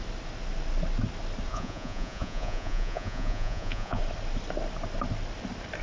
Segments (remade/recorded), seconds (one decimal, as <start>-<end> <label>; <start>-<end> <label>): 0.0-1.5 recorded; 1.5-4.0 remade; 4.0-5.8 recorded